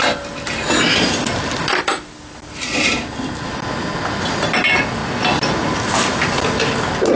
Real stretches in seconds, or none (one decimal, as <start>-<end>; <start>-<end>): 0.0-7.2